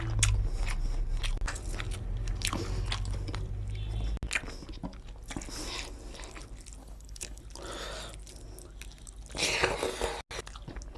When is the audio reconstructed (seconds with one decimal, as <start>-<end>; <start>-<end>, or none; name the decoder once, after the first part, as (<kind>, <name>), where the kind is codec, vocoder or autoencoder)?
6.8-7.4 (codec, HILCodec)